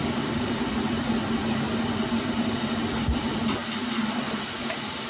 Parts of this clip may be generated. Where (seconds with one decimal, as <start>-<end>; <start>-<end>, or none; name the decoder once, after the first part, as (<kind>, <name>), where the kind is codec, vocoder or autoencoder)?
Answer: 0.0-0.7 (codec, DAC)